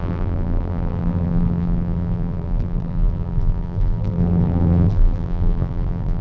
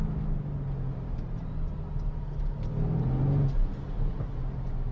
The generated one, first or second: first